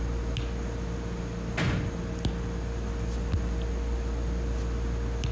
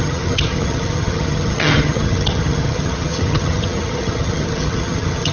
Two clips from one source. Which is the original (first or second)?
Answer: first